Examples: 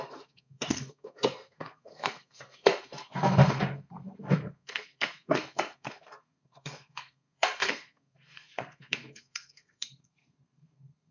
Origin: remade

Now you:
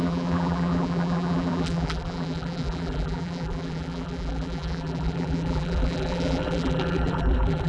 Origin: remade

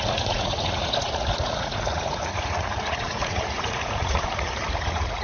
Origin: remade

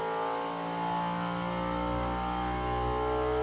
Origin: recorded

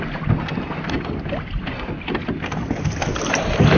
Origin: recorded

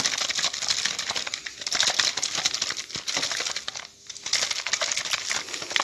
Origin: recorded